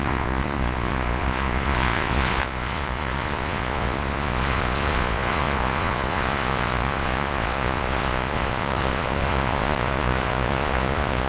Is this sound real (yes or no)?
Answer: no